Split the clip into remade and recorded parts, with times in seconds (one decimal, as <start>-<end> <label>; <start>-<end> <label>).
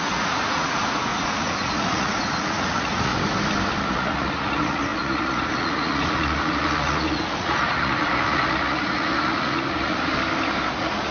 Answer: 0.0-3.1 remade; 3.1-3.8 recorded; 3.8-10.1 remade; 10.1-10.7 recorded; 10.7-11.1 remade